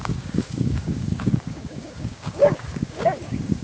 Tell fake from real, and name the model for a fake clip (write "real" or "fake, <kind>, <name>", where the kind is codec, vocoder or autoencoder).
fake, codec, DAC